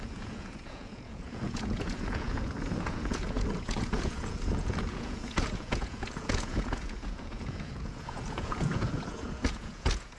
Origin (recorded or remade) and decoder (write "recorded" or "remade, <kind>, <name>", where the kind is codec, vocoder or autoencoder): remade, vocoder, Vocos